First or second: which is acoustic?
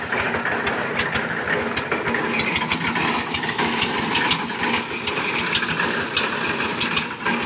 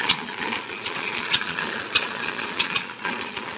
first